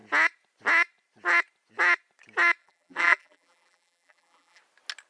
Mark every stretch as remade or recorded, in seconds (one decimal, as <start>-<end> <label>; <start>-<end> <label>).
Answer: 0.0-2.6 recorded; 2.6-4.6 remade; 4.6-5.1 recorded